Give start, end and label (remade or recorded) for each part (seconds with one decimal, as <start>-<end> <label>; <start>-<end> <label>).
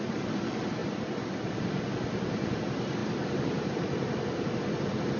0.0-5.2 recorded